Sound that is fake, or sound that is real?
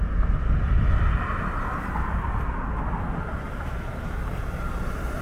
real